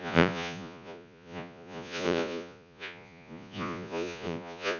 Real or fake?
fake